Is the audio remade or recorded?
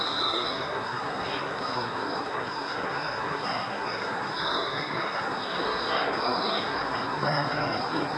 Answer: remade